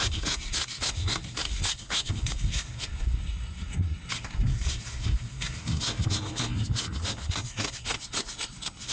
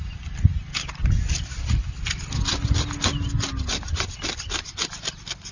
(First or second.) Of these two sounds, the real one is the second